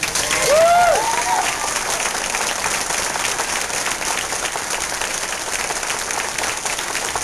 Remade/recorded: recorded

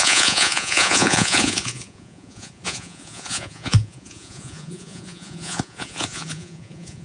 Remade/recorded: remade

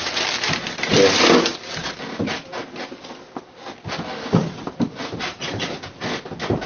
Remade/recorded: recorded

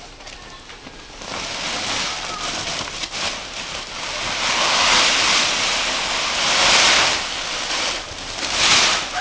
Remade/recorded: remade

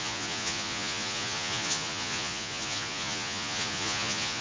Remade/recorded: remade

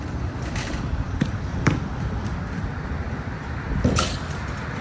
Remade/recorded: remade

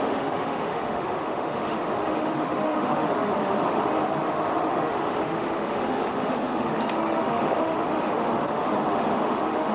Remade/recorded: remade